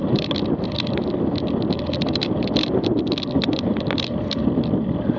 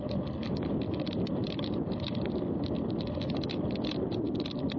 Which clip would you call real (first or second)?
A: first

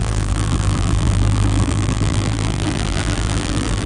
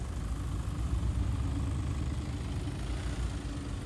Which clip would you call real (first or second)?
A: second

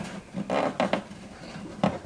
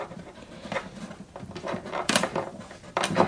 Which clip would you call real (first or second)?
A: first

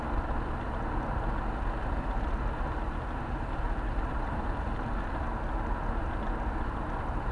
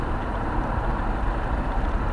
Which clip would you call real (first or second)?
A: first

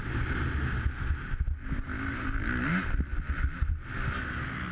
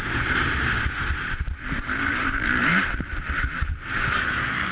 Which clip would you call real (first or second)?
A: first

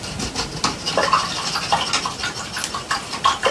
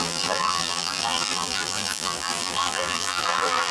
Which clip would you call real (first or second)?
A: first